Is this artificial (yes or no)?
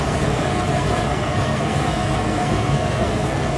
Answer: yes